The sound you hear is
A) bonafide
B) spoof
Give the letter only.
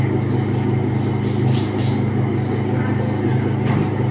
A